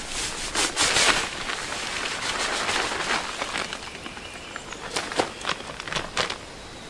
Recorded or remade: recorded